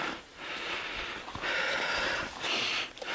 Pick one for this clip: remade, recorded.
recorded